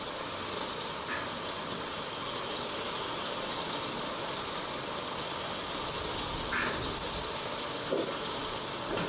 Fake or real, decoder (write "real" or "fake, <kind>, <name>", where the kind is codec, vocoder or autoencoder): real